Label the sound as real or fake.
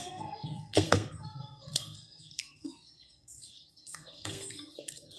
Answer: fake